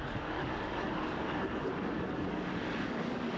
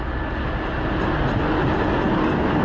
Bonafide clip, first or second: second